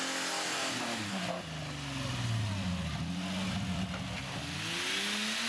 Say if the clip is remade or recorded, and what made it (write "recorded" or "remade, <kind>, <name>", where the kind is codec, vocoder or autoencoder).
recorded